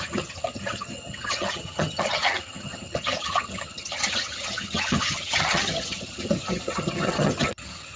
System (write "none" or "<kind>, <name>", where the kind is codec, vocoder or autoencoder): vocoder, HiFi-GAN